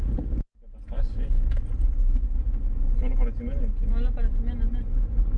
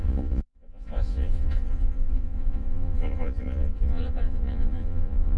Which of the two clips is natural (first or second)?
first